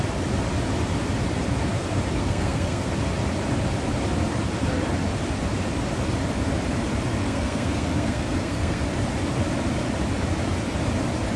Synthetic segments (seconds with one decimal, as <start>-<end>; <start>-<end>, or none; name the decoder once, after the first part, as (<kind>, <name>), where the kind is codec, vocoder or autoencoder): 2.2-2.9 (codec, SNAC); 7.2-8.8